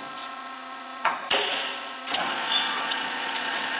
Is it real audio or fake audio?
fake